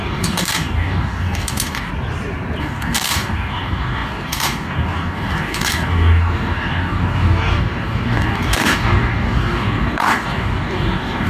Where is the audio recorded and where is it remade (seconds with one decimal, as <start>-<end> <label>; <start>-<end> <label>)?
0.0-1.9 remade; 1.9-2.6 recorded; 2.6-11.3 remade